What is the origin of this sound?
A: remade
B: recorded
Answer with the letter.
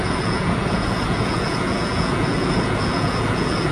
A